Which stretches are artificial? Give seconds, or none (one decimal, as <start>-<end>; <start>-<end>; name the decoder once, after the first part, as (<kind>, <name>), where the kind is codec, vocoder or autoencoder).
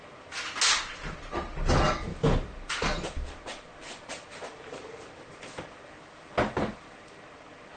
none